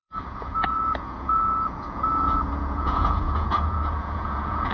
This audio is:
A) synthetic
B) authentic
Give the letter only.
A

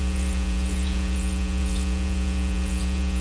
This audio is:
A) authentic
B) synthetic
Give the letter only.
B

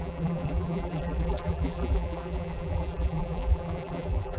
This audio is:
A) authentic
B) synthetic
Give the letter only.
B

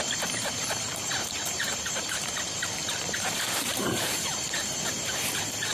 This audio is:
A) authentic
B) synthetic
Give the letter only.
B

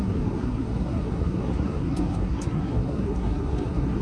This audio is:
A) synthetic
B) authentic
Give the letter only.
A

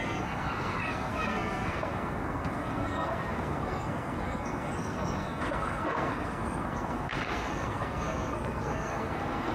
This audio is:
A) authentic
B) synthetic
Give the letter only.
B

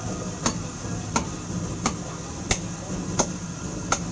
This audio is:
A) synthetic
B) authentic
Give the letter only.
B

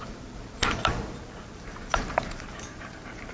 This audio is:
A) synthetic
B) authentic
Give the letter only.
A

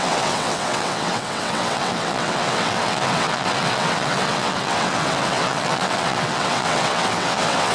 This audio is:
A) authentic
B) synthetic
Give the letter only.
B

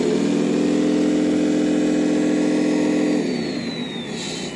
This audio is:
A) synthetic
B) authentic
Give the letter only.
B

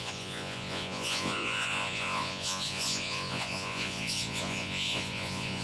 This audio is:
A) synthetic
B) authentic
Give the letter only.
A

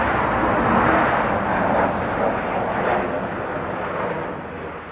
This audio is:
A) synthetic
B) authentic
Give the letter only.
B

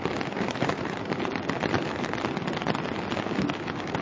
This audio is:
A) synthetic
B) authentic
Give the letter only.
B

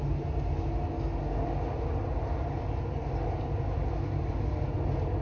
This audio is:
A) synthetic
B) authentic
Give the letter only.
B